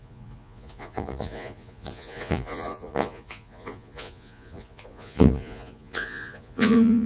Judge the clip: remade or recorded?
remade